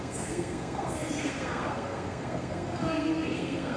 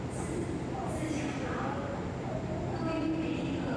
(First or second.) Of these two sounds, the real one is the second